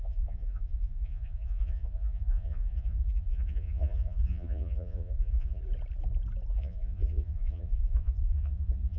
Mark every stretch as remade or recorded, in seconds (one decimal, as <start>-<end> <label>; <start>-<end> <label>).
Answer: 0.0-5.6 remade; 5.6-6.5 recorded; 6.5-9.0 remade

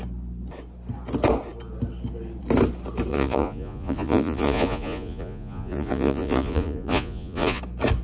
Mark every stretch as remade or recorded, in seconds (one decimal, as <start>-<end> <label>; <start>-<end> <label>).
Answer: 0.0-3.1 recorded; 3.1-7.6 remade; 7.6-8.0 recorded